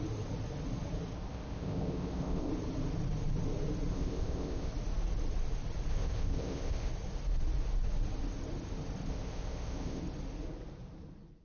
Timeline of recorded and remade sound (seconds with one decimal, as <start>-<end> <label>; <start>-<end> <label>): 0.0-1.3 recorded; 1.3-2.5 remade; 2.5-3.9 recorded; 3.9-4.7 remade; 4.7-5.9 recorded; 5.9-6.9 remade; 6.9-9.1 recorded; 9.1-10.0 remade; 10.0-11.4 recorded